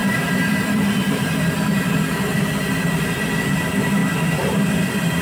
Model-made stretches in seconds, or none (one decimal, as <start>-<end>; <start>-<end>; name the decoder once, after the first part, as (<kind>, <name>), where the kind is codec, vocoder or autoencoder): 0.0-2.1 (vocoder, BigVGAN v2)